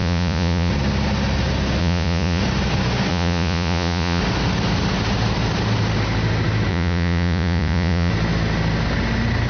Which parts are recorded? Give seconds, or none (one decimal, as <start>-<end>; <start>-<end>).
0.7-1.8; 2.4-3.1; 4.2-6.7; 8.1-9.5